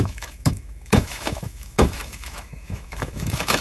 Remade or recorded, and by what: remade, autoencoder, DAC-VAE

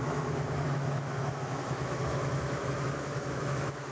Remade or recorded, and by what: remade, autoencoder, DAC-VAE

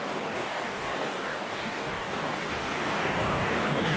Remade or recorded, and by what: remade, codec, DAC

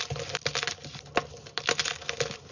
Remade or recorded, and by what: recorded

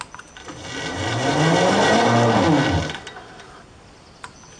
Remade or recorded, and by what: recorded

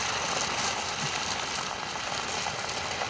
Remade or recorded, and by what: recorded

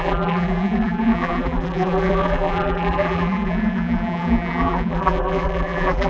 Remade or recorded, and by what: remade, vocoder, BigVGAN v2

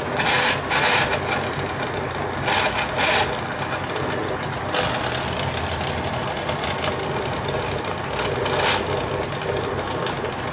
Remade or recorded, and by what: recorded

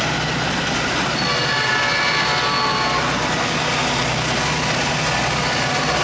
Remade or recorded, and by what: recorded